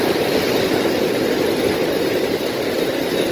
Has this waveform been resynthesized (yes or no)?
no